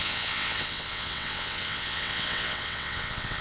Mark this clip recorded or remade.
remade